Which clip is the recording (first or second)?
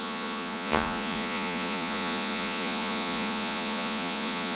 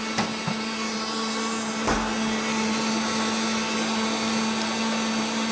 second